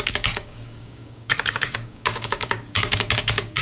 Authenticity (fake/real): fake